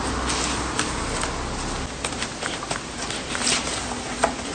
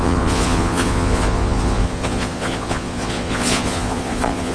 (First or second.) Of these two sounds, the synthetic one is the second